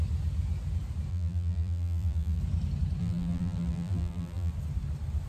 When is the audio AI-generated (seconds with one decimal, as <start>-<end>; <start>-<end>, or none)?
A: 1.1-2.4; 3.0-4.5